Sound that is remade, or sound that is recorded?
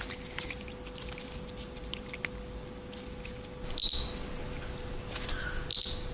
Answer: recorded